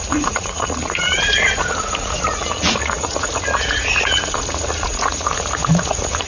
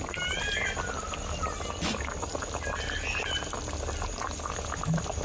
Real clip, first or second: second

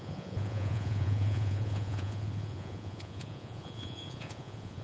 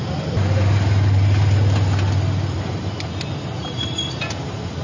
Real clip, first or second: second